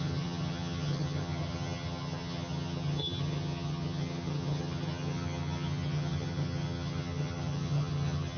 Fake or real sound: fake